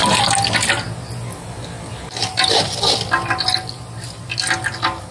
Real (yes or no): yes